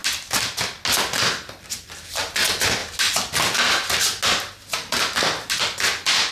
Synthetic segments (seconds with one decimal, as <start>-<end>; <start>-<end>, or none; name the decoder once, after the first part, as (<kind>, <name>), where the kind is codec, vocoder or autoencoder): none